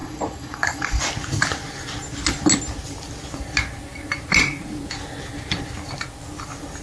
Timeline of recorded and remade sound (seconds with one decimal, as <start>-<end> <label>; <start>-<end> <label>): 0.0-1.0 remade; 1.0-6.8 recorded